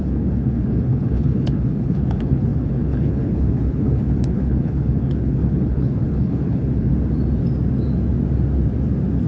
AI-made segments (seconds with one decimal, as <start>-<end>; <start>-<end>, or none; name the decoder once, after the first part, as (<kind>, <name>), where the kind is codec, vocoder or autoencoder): 0.0-6.9 (codec, HILCodec)